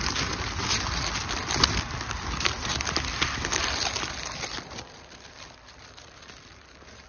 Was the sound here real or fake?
real